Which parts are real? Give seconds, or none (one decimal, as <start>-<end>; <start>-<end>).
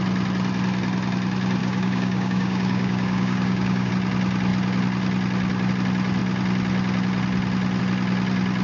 0.0-1.6; 3.9-8.6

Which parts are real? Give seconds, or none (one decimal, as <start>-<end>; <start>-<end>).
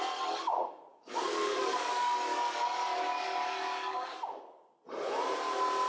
0.0-0.9; 4.4-5.9